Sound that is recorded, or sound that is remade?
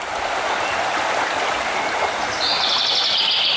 recorded